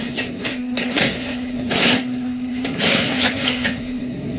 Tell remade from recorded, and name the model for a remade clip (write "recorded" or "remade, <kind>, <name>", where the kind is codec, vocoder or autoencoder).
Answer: remade, codec, SNAC